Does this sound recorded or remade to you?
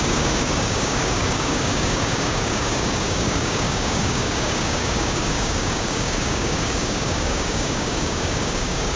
remade